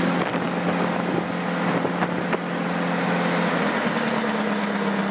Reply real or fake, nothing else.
real